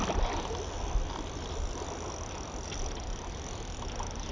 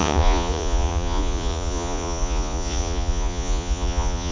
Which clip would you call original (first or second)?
first